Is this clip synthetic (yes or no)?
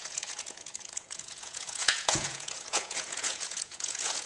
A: yes